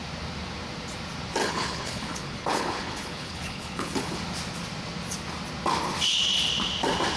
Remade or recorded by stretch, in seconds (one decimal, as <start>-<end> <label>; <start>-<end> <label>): 0.0-1.4 recorded; 1.4-4.2 remade; 4.2-7.2 recorded

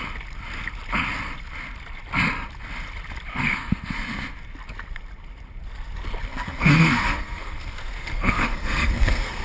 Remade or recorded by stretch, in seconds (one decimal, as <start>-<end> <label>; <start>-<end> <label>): 0.0-3.3 recorded; 3.3-3.9 remade; 3.9-6.3 recorded; 6.3-9.4 remade

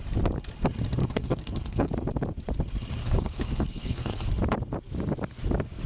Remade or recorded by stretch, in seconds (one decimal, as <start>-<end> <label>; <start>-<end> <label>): 0.0-1.0 recorded; 1.0-1.9 remade; 1.9-3.0 recorded; 3.0-4.3 remade; 4.3-5.9 recorded

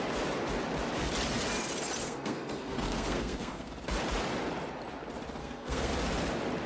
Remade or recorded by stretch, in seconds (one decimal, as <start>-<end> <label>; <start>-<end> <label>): 0.0-2.0 recorded; 2.0-3.7 remade; 3.7-5.4 recorded; 5.4-5.9 remade; 5.9-6.7 recorded

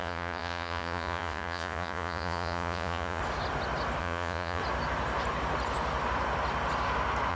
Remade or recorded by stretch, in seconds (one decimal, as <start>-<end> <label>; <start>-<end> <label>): 0.0-3.2 remade; 3.2-4.0 recorded; 4.0-4.6 remade; 4.6-7.3 recorded

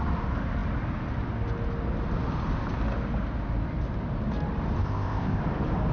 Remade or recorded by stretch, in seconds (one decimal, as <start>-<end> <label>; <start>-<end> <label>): 0.0-4.8 recorded; 4.8-5.4 remade; 5.4-5.9 recorded

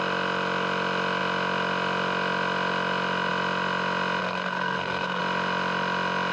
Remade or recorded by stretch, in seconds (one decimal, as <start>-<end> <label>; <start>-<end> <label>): 0.0-4.2 recorded; 4.2-5.2 remade; 5.2-6.3 recorded